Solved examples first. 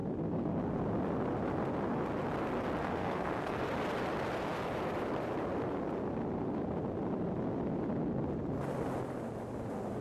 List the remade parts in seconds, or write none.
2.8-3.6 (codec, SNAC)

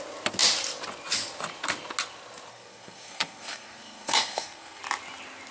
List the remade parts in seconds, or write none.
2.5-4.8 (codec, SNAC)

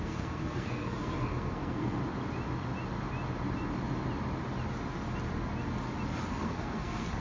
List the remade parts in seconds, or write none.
0.0-2.0 (codec, SNAC); 6.3-7.2

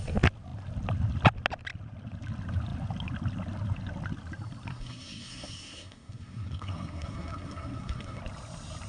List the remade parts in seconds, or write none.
4.7-8.2 (codec, SNAC)

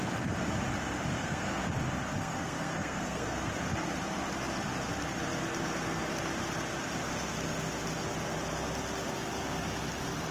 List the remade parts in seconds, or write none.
1.1-1.6 (codec, SNAC); 2.2-3.5

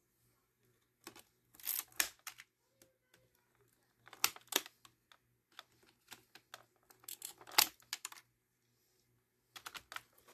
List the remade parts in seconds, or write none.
none

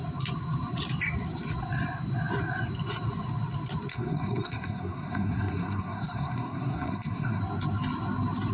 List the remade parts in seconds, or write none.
3.9-7.4 (codec, SNAC)

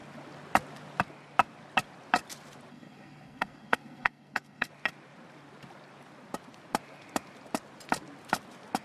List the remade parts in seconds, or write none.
2.7-4.7 (codec, SNAC)